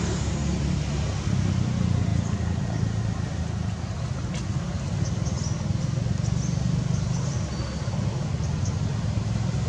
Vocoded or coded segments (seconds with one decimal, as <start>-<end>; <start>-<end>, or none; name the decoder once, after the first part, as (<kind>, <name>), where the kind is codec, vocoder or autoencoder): none